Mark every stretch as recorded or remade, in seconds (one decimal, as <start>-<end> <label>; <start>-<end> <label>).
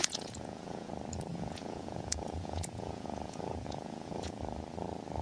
0.0-0.9 remade; 0.9-1.3 recorded; 1.3-4.4 remade; 4.4-5.2 recorded